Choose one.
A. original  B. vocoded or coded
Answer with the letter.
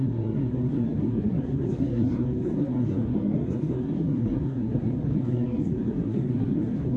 B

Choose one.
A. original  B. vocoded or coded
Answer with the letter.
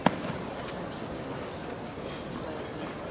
B